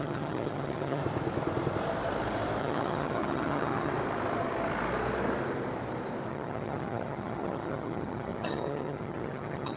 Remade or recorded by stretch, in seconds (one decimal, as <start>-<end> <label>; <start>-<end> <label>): 0.0-1.0 remade; 1.0-2.6 recorded; 2.6-3.9 remade; 3.9-6.3 recorded; 6.3-9.8 remade

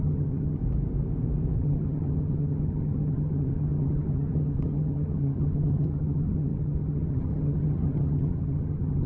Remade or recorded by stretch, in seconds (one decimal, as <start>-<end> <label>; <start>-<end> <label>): 0.0-0.6 remade; 0.6-1.6 recorded; 1.6-9.1 remade